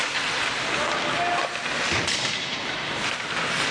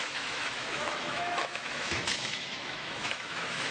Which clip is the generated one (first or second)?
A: second